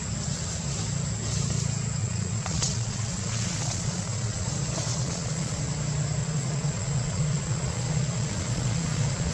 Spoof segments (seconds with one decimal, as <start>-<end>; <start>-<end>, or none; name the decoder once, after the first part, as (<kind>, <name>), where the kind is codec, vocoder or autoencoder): 2.0-4.5 (vocoder, Vocos); 4.9-5.6; 6.2-9.3